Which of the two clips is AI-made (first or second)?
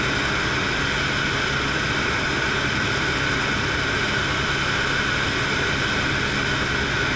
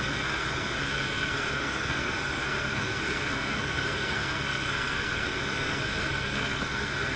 second